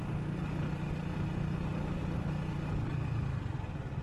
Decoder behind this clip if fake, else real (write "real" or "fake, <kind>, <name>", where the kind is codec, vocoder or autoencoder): real